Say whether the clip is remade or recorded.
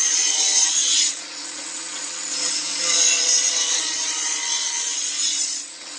remade